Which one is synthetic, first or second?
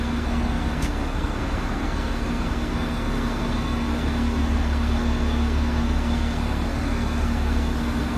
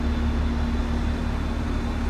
first